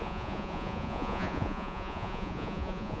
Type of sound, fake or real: fake